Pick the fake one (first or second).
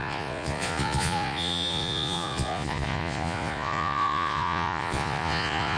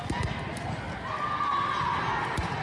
first